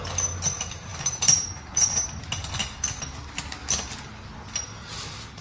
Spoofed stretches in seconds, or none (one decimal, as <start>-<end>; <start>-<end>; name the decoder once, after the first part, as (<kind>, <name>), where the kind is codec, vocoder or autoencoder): 0.9-1.9 (vocoder, BigVGAN v2)